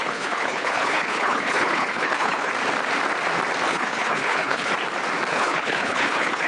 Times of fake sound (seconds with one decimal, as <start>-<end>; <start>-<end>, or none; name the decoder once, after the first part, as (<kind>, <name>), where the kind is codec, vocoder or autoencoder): 0.0-2.5 (codec, HILCodec); 3.7-4.7; 5.3-6.5